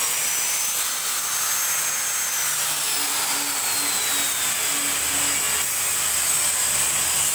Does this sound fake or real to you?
real